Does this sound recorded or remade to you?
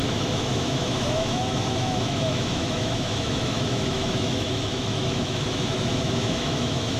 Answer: remade